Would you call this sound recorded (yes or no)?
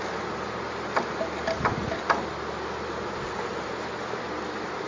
yes